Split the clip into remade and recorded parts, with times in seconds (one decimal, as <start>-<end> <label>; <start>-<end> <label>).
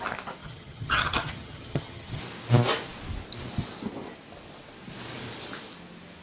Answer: 0.0-0.4 recorded; 0.4-2.2 remade; 2.2-6.2 recorded